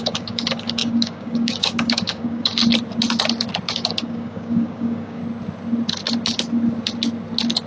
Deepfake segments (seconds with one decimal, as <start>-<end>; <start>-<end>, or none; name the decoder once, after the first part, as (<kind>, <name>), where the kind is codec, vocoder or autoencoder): 0.0-2.6 (codec, DAC); 3.7-5.2